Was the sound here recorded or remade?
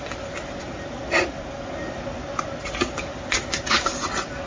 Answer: recorded